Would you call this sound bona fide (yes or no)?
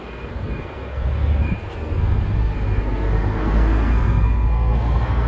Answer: no